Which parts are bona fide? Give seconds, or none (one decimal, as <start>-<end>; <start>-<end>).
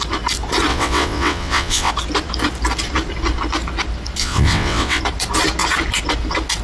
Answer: 0.0-0.7; 1.9-4.2; 5.0-6.6